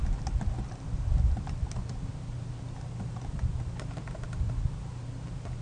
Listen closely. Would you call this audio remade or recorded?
recorded